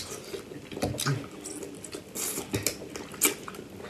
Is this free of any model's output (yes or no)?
yes